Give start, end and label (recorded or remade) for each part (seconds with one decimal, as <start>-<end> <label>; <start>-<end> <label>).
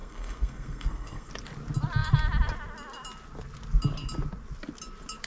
0.0-1.3 remade; 1.3-5.3 recorded